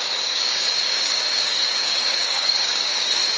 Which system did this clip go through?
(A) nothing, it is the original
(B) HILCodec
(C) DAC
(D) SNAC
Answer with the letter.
C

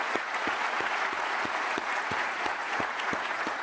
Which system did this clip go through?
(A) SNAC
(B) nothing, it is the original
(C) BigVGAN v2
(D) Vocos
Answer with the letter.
D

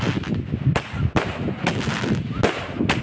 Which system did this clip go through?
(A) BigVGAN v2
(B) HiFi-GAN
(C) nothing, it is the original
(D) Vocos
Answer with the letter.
C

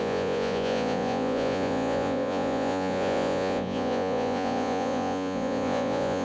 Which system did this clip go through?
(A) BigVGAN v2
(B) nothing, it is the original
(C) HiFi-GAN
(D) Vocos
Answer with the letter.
D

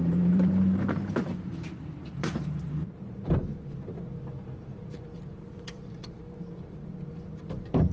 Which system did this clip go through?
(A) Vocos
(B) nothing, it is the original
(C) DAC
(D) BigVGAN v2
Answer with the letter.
D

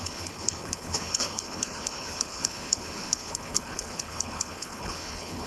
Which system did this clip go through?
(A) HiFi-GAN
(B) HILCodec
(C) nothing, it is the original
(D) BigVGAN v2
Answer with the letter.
B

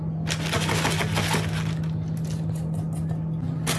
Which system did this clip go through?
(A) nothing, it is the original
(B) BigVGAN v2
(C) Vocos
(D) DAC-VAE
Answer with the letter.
A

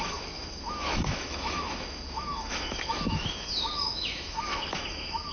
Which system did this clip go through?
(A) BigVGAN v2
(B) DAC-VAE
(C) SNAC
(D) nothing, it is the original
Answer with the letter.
B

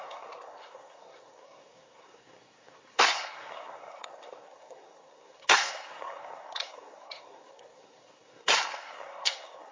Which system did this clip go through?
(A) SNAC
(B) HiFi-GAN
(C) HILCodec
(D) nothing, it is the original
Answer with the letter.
A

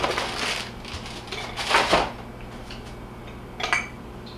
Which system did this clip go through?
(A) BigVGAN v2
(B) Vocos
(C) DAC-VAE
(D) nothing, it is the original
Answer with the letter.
D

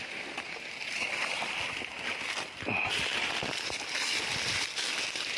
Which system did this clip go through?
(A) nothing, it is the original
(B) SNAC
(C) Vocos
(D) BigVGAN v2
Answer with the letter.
A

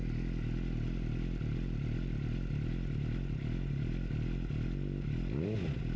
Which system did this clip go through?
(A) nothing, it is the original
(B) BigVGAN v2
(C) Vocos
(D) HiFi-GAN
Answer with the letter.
A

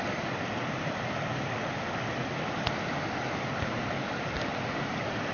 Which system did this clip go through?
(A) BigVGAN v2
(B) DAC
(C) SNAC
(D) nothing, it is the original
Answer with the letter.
D